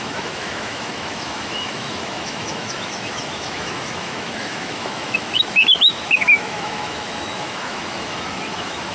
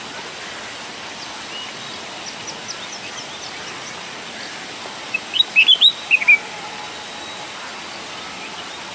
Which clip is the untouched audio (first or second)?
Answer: second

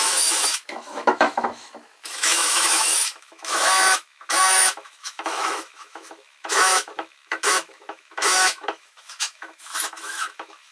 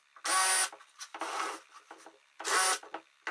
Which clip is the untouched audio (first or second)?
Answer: second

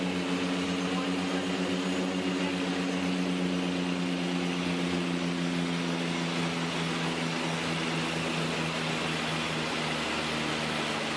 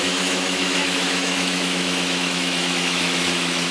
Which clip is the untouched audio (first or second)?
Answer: first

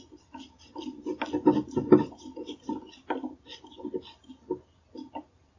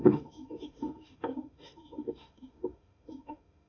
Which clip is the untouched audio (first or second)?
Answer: first